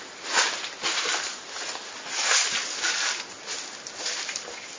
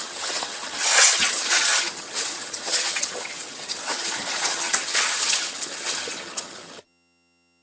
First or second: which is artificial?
second